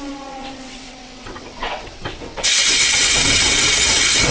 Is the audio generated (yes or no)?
yes